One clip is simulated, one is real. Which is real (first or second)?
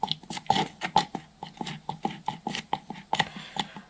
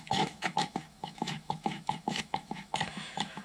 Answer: first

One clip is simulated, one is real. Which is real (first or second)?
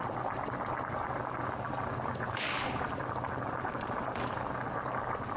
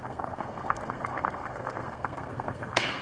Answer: first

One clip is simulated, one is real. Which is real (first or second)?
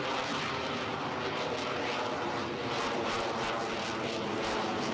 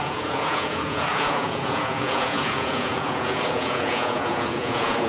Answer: first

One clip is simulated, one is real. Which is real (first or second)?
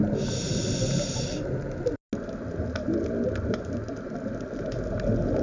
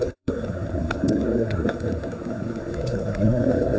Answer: first